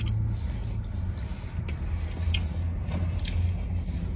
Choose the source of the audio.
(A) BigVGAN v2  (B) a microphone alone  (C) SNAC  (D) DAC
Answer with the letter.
B